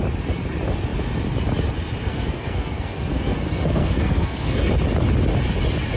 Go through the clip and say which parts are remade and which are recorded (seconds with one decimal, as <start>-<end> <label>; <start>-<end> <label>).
0.0-2.1 recorded; 2.1-4.7 remade; 4.7-6.0 recorded